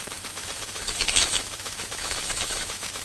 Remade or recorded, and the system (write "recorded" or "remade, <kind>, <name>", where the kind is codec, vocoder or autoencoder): remade, autoencoder, DAC-VAE